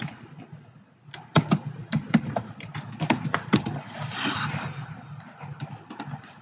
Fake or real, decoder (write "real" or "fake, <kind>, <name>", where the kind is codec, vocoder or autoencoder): real